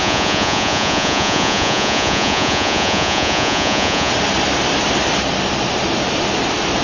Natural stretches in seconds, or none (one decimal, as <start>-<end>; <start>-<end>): 4.1-6.8

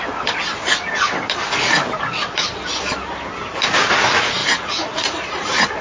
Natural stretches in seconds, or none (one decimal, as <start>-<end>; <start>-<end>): 0.0-4.4

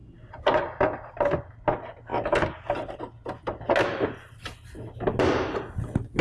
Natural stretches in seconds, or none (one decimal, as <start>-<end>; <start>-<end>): 0.0-6.2

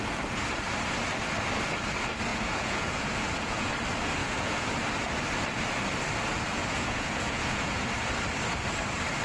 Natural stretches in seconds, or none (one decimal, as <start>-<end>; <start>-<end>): 0.0-2.3; 3.7-4.2; 4.7-6.6; 7.9-9.2

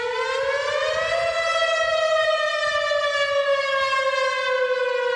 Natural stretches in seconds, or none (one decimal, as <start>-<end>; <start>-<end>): 0.0-5.2

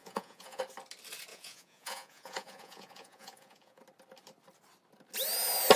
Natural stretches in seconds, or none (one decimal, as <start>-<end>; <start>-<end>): 0.6-1.3; 3.8-5.8

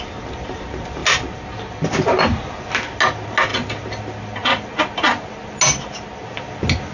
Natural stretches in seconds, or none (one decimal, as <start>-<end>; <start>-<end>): 0.0-6.9